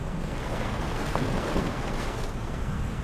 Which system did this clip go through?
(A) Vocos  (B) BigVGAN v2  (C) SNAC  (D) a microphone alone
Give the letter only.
C